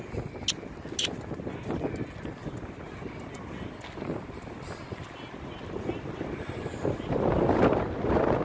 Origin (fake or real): real